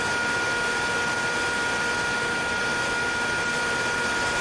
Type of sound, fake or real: real